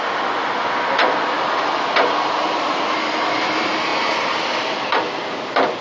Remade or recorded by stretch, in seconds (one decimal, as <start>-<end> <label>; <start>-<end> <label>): 0.0-5.8 recorded